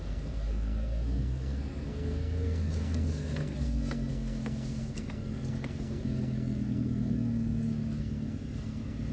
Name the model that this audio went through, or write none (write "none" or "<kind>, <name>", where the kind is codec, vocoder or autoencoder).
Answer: codec, SNAC